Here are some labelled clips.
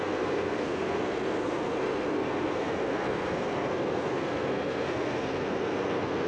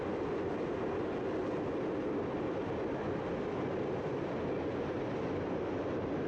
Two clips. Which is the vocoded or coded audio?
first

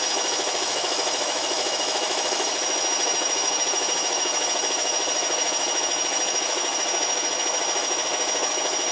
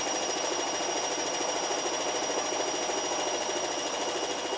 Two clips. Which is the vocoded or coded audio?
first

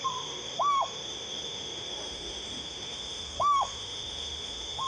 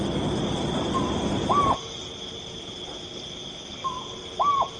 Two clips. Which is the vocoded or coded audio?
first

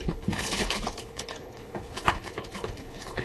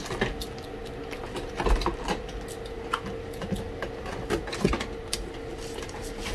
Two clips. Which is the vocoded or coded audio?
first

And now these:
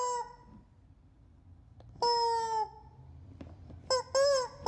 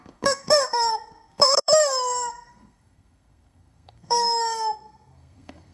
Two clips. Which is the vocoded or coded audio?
second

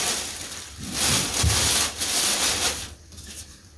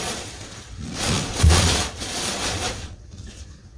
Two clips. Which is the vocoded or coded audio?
second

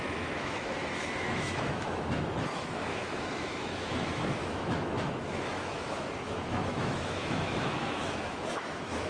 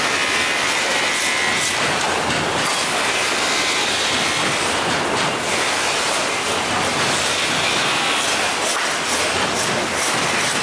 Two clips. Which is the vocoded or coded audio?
first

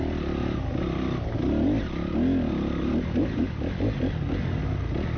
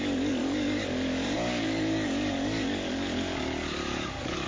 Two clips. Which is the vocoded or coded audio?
second